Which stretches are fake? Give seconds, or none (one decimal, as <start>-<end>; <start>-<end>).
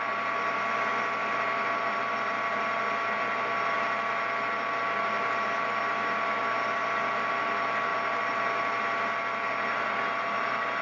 none